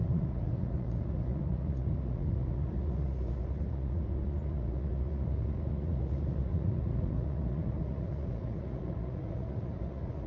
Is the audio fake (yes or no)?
yes